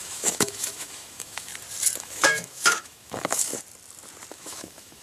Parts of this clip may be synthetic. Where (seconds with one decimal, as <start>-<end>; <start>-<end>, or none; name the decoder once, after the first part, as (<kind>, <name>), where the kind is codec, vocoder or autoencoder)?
0.0-1.5 (autoencoder, DAC-VAE); 2.0-3.5; 4.3-5.0